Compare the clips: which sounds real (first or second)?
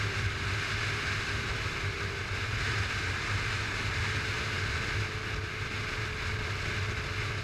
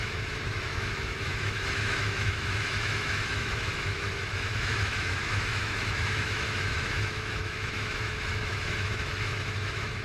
first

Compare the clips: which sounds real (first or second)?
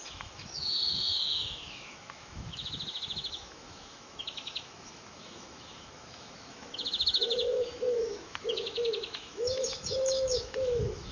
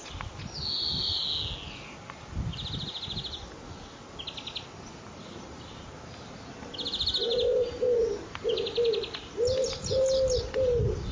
second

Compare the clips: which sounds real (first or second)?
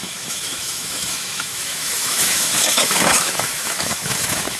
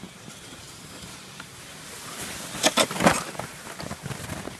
second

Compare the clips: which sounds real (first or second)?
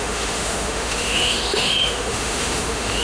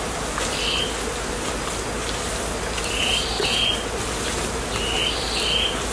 second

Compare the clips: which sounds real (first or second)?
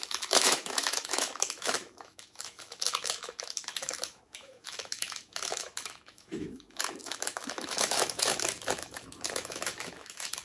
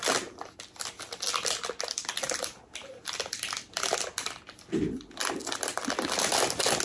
second